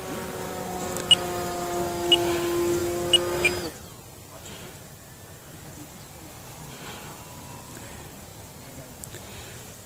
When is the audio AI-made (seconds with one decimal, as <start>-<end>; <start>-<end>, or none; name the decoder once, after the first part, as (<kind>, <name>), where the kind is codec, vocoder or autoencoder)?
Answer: none